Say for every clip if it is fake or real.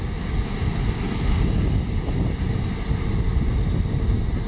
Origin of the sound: real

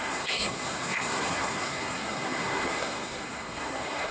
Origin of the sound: fake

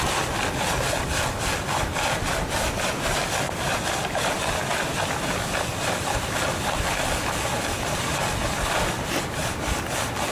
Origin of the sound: real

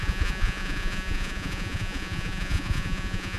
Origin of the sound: fake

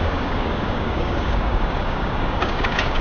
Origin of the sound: fake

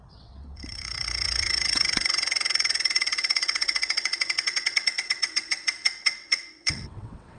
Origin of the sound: fake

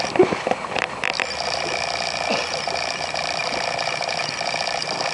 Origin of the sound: real